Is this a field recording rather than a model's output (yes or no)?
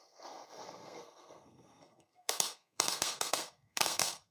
no